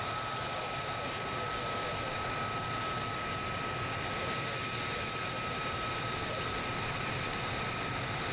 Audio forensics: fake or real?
real